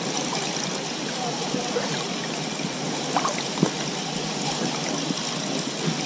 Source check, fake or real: real